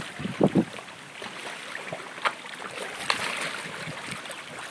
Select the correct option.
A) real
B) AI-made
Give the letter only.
A